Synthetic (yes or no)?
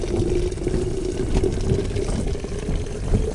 no